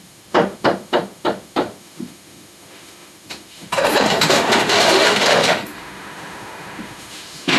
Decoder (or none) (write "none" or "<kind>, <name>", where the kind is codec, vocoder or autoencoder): autoencoder, DAC-VAE